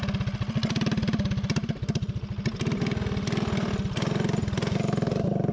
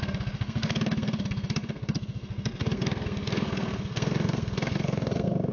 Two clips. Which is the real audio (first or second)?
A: first